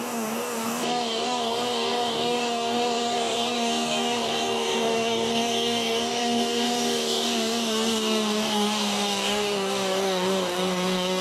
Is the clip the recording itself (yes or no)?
no